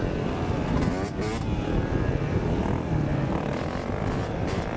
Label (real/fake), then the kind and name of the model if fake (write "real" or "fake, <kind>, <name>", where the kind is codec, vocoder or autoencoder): real